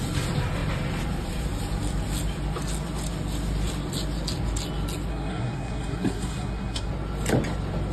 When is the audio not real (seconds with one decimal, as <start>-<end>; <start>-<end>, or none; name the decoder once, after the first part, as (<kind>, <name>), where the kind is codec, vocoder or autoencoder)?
5.1-6.9 (codec, SNAC)